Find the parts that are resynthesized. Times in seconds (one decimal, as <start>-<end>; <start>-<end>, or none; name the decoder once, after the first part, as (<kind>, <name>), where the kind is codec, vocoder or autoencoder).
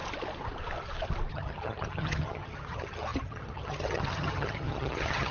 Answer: 1.3-5.3 (vocoder, HiFi-GAN)